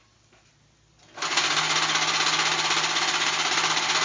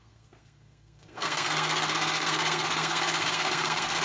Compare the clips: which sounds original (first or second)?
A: first